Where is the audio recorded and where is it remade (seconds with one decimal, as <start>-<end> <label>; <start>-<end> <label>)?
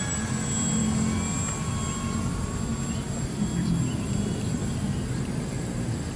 0.0-6.2 recorded